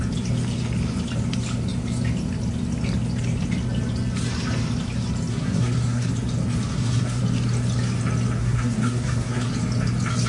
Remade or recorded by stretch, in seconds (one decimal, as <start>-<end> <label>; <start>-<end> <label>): 0.0-5.3 recorded; 5.3-6.1 remade; 6.1-6.7 recorded; 6.7-7.2 remade; 7.2-8.4 recorded; 8.4-9.5 remade; 9.5-10.3 recorded